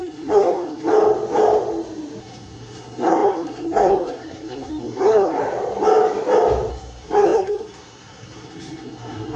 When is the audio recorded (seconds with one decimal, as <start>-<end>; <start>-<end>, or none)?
0.9-2.2; 5.4-6.7